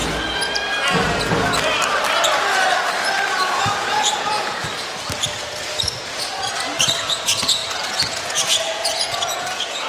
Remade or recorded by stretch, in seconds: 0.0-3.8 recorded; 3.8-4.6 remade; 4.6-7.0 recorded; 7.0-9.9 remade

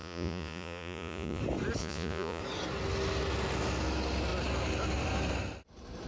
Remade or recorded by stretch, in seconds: 0.0-1.4 remade; 1.4-1.8 recorded; 1.8-2.4 remade; 2.4-6.1 recorded